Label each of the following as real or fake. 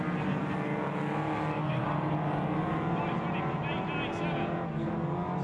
real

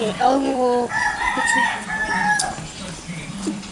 fake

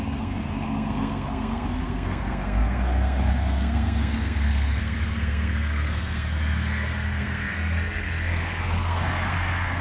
fake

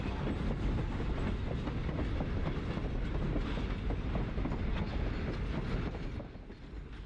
real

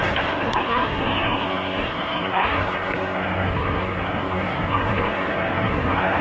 fake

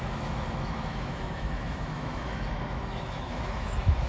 fake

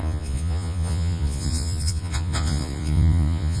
fake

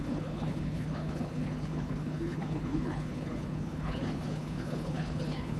fake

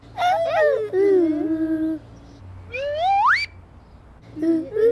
real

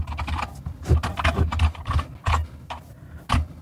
real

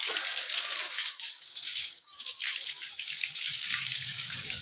fake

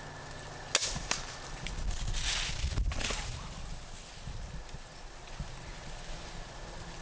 real